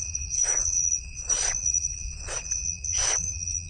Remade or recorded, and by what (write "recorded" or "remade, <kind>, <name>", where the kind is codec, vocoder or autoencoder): remade, vocoder, Vocos